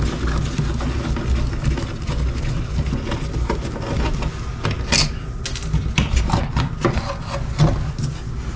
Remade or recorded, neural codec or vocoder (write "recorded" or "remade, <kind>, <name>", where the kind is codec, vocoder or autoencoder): recorded